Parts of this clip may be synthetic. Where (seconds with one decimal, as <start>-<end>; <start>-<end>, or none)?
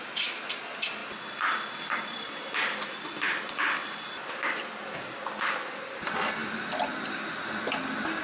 none